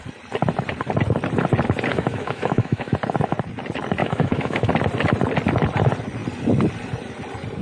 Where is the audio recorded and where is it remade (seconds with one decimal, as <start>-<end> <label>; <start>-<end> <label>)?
0.0-1.9 recorded; 1.9-2.9 remade; 2.9-4.0 recorded; 4.0-4.7 remade; 4.7-7.6 recorded